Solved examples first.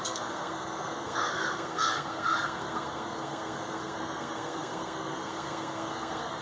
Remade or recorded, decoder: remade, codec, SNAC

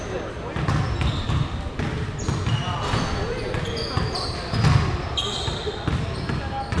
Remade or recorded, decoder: recorded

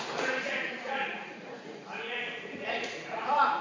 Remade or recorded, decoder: remade, vocoder, Vocos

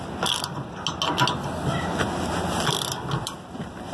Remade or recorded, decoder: recorded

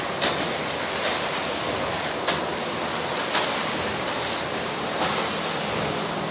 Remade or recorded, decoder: recorded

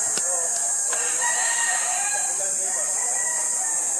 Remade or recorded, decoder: recorded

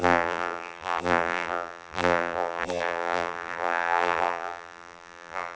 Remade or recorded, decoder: remade, vocoder, BigVGAN v2